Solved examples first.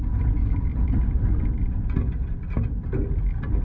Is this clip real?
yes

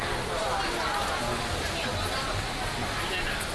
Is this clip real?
yes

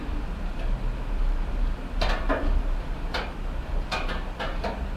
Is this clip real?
no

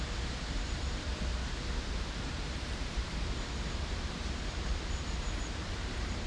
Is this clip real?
no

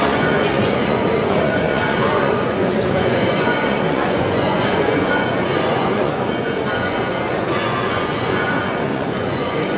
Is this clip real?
no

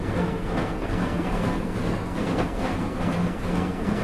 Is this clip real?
no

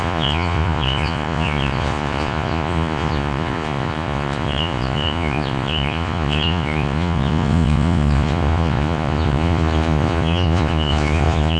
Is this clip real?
no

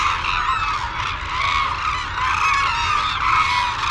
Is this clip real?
yes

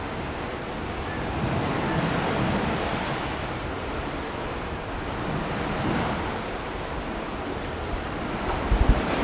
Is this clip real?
yes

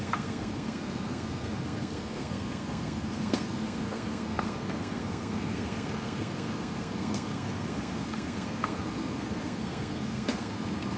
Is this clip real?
no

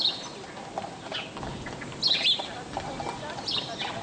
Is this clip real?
yes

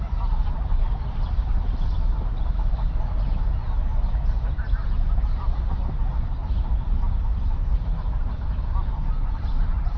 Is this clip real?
yes